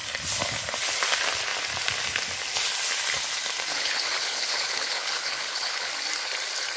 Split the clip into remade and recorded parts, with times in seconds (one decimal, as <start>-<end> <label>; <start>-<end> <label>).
0.0-3.7 recorded; 3.7-5.9 remade; 5.9-6.8 recorded